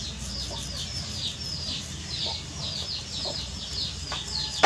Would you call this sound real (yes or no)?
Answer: yes